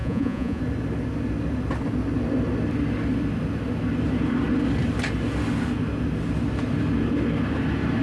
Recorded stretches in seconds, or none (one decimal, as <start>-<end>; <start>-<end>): 0.6-8.0